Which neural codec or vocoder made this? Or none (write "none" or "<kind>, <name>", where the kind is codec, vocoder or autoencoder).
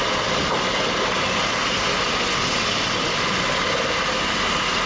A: none